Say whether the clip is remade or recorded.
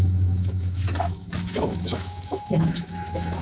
remade